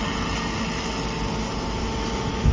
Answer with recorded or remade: recorded